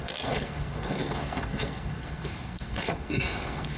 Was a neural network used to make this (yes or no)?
yes